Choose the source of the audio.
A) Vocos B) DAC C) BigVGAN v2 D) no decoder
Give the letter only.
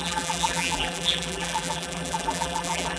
C